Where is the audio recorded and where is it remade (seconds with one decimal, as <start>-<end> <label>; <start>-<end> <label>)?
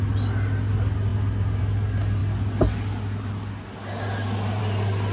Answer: 0.0-5.1 recorded